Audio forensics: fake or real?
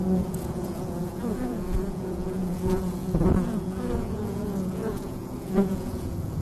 fake